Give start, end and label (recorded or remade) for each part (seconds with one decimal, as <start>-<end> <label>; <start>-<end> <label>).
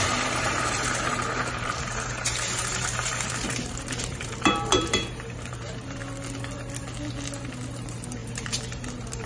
0.0-6.0 remade; 6.0-7.4 recorded; 7.4-9.3 remade